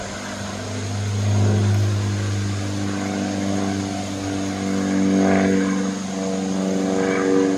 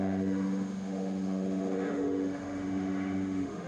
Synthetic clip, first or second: second